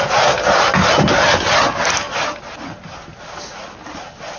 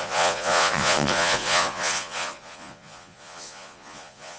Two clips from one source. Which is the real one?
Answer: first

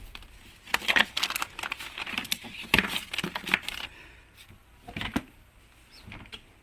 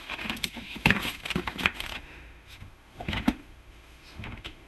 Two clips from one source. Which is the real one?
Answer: first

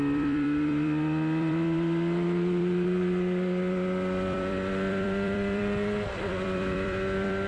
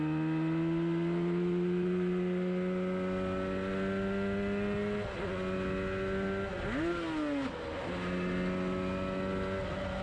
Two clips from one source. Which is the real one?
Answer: second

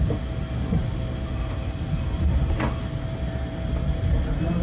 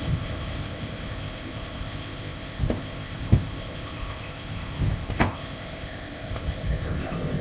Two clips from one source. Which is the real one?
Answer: first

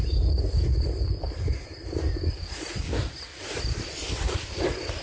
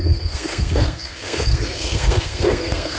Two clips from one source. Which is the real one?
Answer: first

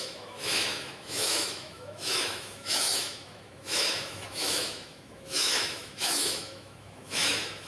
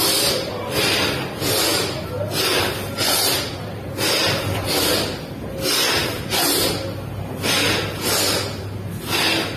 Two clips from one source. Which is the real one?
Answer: second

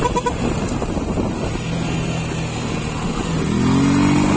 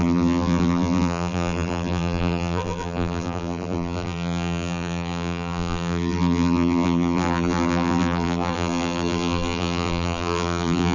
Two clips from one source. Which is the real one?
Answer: first